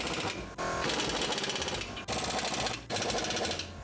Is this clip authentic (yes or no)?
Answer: yes